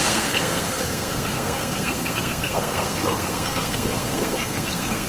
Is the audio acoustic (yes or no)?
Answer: no